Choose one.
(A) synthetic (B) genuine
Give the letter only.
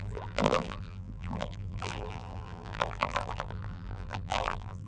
A